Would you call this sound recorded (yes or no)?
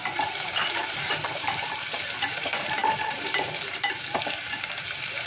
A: no